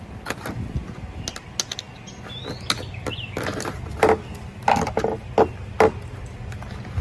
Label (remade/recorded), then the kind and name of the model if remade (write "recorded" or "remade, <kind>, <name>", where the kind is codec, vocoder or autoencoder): recorded